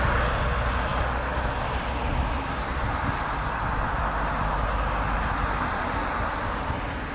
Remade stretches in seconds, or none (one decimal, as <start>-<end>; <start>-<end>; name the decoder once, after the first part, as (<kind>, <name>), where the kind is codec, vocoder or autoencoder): none